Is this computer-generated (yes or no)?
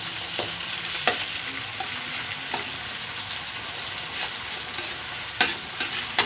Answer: no